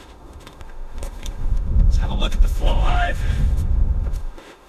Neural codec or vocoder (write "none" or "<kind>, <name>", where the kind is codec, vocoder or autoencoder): autoencoder, DAC-VAE